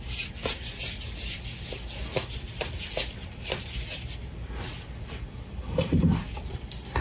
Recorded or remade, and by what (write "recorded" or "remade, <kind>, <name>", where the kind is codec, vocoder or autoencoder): recorded